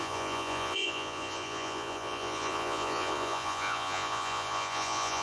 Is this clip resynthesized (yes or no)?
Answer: yes